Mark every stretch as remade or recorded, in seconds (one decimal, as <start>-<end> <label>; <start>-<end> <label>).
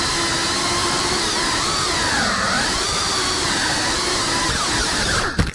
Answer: 0.0-0.8 recorded; 0.8-4.0 remade; 4.0-4.8 recorded; 4.8-5.5 remade